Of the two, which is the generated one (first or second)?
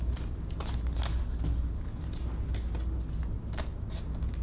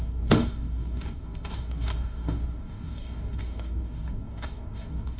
second